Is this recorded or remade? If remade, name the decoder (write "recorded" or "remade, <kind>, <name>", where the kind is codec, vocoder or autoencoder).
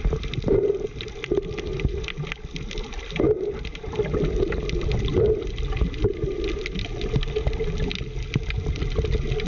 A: recorded